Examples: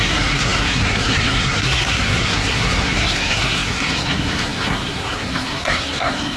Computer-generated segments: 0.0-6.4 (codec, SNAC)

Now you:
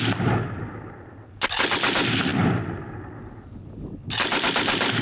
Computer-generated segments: none

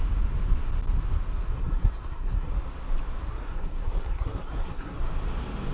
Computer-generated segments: 1.5-2.5 (codec, SNAC); 3.3-5.1

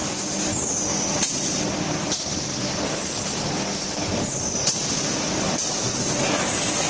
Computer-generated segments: none